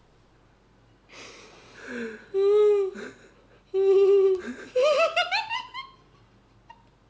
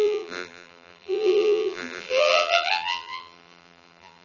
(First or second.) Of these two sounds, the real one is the first